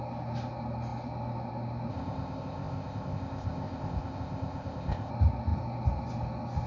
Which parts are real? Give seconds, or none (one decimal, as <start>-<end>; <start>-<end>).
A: 0.0-1.9; 5.1-6.7